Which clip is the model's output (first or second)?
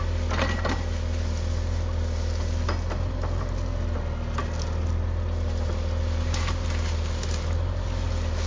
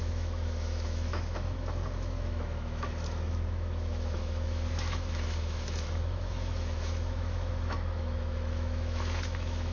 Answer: second